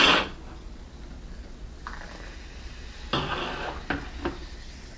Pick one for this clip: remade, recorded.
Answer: recorded